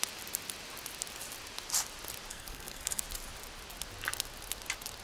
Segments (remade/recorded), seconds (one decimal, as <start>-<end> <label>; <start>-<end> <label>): 0.0-2.3 recorded; 2.3-3.0 remade; 3.0-5.0 recorded